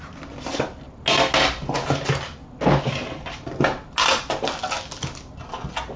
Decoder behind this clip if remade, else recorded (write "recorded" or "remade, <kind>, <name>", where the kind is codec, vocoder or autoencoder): recorded